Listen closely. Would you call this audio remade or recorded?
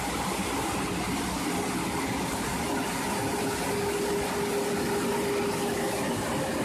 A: recorded